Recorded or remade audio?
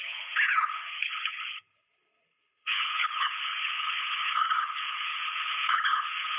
remade